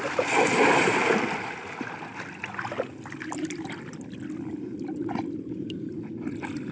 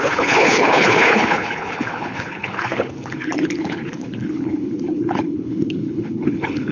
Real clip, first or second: first